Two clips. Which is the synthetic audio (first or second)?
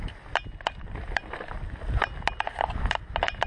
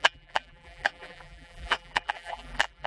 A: second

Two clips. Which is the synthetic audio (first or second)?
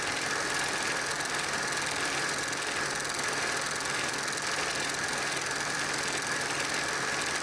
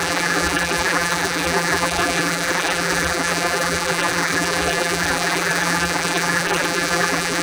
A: second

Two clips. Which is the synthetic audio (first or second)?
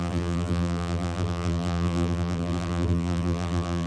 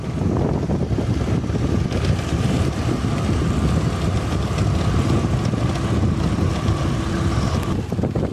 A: first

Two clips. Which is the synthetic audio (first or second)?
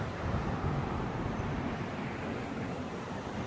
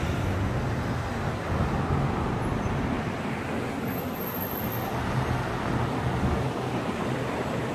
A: first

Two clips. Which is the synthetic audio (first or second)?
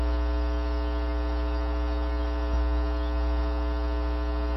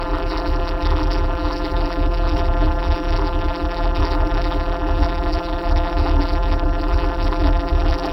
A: second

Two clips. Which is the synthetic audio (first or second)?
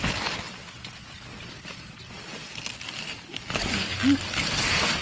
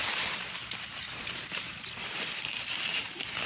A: second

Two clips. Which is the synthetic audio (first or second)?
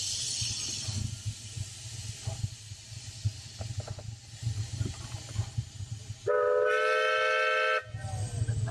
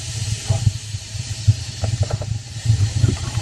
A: second